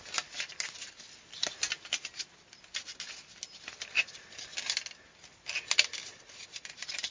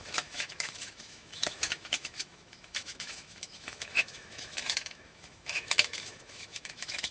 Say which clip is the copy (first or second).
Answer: second